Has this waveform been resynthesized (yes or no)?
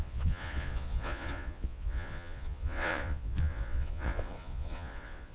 yes